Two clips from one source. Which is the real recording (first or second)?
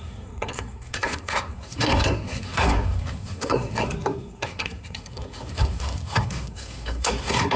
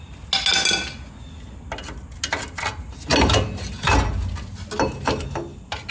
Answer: second